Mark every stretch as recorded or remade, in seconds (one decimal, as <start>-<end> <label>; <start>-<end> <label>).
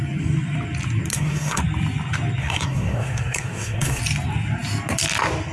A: 0.0-1.1 recorded; 1.1-1.6 remade; 1.6-2.4 recorded; 2.4-4.0 remade; 4.0-5.5 recorded